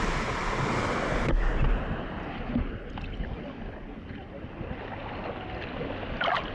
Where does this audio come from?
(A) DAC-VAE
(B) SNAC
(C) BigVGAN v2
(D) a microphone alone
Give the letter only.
D